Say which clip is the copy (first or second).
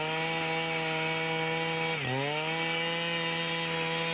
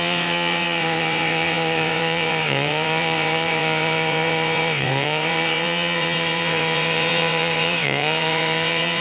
second